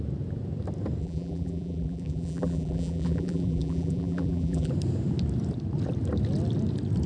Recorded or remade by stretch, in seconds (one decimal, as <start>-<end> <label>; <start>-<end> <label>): 0.0-1.0 recorded; 1.0-4.7 remade; 4.7-7.1 recorded